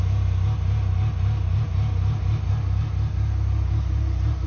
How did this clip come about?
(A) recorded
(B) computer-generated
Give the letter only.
A